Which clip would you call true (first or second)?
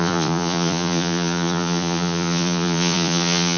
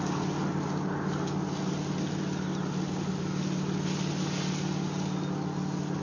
second